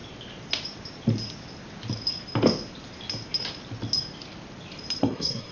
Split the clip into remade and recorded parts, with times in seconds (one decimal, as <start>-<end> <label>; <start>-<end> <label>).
0.0-5.0 recorded; 5.0-5.5 remade